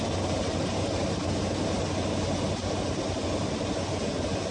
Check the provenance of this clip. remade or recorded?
recorded